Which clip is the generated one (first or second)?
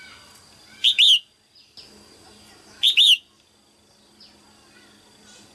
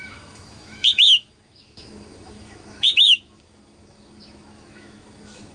second